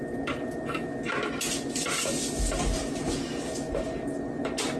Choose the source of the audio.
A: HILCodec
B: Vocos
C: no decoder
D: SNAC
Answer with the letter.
C